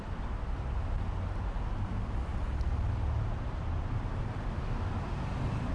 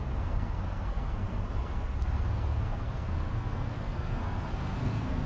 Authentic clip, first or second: first